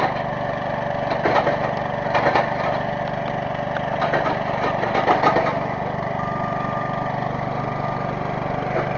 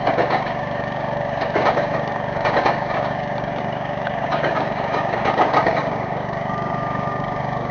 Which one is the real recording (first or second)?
first